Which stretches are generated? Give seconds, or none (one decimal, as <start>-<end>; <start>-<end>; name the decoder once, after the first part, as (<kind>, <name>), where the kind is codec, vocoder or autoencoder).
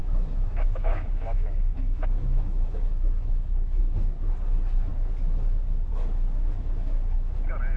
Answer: 0.0-3.8 (autoencoder, DAC-VAE)